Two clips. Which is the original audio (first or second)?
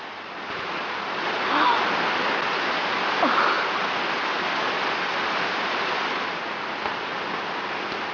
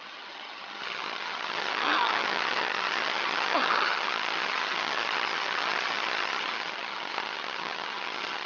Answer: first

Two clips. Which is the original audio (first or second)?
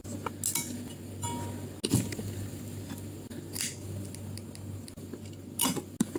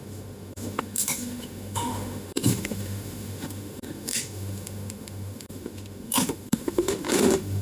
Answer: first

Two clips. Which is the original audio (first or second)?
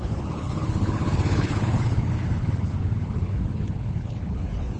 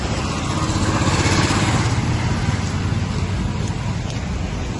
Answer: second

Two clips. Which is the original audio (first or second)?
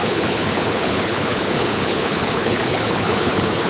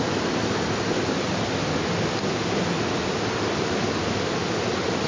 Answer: second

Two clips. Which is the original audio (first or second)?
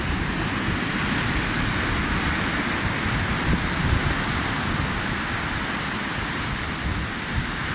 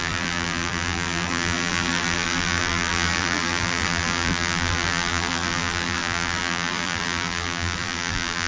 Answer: first